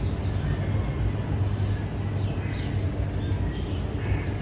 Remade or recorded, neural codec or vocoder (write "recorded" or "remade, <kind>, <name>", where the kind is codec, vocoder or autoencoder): recorded